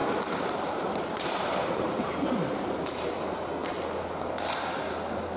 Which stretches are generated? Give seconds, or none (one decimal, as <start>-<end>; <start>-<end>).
0.0-3.1